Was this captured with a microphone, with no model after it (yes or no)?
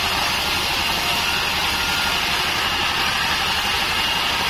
yes